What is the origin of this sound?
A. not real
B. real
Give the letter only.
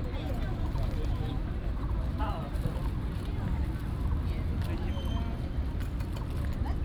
B